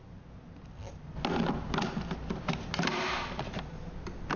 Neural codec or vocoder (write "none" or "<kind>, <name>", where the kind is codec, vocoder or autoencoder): none